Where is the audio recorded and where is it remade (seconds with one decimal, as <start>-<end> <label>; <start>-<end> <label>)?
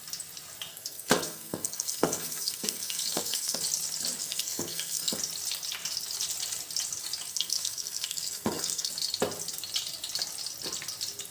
0.0-0.7 recorded; 0.7-3.6 remade; 3.6-4.2 recorded; 4.2-5.2 remade; 5.2-7.3 recorded; 7.3-8.9 remade; 8.9-11.3 recorded